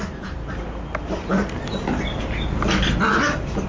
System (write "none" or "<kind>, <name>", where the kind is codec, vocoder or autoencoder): none